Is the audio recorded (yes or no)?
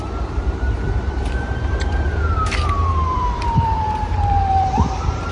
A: no